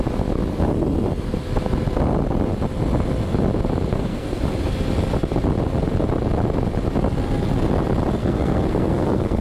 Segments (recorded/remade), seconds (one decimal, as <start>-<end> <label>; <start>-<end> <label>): 0.0-3.9 recorded; 3.9-4.4 remade; 4.4-8.2 recorded; 8.2-9.4 remade